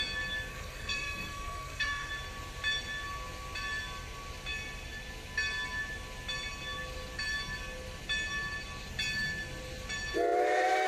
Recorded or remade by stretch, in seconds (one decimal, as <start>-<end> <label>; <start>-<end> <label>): 0.0-0.5 recorded; 0.5-2.1 remade; 2.1-10.9 recorded